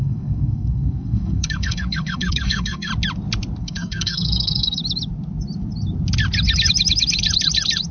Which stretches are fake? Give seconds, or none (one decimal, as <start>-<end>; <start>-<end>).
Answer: 0.0-2.9; 3.6-4.8